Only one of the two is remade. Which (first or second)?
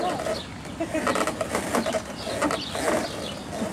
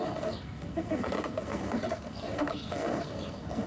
second